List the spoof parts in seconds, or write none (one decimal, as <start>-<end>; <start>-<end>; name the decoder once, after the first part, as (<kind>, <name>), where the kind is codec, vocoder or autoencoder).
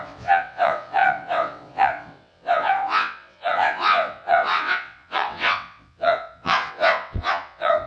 0.0-7.9 (vocoder, WaveNeXt)